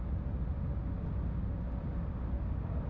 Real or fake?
real